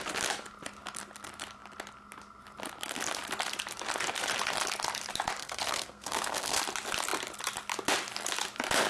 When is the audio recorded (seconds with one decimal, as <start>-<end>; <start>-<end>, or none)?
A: 0.0-5.4; 6.6-8.9